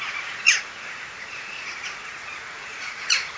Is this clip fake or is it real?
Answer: fake